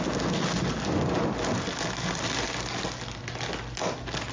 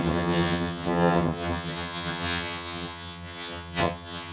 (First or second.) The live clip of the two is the first